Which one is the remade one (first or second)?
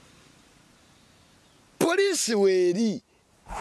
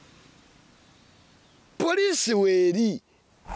first